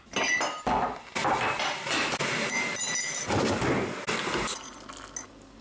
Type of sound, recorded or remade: recorded